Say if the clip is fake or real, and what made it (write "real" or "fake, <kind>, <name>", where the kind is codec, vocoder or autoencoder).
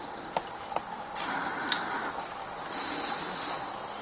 real